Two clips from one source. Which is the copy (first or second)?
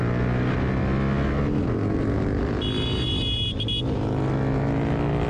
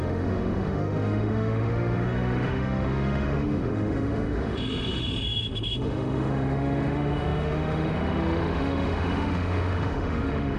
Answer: second